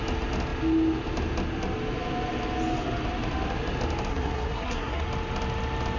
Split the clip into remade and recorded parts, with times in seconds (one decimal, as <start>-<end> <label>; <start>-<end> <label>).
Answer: 0.0-4.1 recorded; 4.1-5.0 remade; 5.0-6.0 recorded